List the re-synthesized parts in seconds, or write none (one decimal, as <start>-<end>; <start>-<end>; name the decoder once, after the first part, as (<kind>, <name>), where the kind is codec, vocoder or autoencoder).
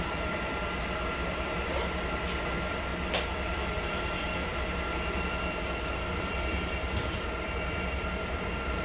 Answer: 0.0-2.9 (vocoder, BigVGAN v2); 3.8-8.8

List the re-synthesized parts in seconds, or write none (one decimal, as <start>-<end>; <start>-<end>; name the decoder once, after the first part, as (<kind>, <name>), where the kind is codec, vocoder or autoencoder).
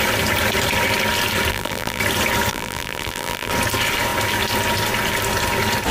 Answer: 1.5-2.0 (vocoder, BigVGAN v2); 2.5-3.5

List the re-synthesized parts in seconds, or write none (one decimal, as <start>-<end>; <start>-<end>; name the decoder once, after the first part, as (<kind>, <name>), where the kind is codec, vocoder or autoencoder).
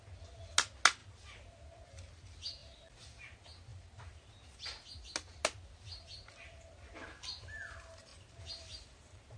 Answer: 1.0-1.8 (vocoder, BigVGAN v2); 2.6-3.1; 3.7-4.3; 8.1-9.4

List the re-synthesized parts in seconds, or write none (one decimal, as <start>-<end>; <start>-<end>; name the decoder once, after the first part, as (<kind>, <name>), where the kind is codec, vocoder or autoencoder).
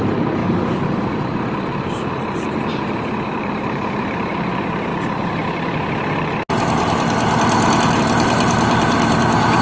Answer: 0.0-4.9 (vocoder, BigVGAN v2); 8.0-9.6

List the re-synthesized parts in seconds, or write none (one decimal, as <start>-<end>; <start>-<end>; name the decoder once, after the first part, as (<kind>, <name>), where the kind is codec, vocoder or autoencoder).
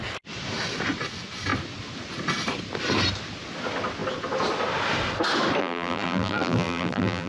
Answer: 5.6-7.3 (vocoder, BigVGAN v2)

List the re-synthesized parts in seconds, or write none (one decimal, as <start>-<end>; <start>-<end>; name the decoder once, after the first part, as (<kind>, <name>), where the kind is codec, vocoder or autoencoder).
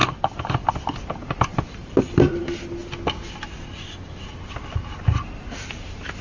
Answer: 0.0-0.7 (vocoder, BigVGAN v2); 1.5-2.4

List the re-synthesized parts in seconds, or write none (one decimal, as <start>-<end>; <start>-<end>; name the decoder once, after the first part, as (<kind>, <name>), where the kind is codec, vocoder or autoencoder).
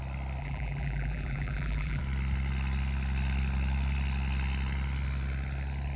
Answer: 0.4-2.0 (vocoder, BigVGAN v2)